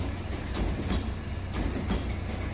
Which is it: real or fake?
real